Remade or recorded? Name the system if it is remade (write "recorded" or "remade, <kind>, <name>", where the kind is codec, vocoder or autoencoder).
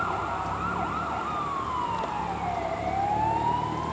recorded